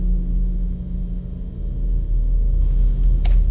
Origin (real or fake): real